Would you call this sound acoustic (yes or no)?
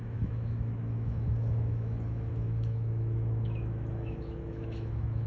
no